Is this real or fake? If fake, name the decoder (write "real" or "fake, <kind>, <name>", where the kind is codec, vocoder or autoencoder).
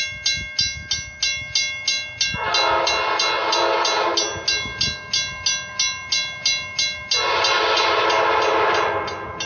real